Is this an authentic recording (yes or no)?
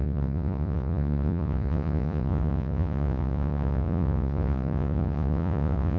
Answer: no